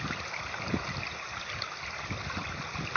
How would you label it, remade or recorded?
recorded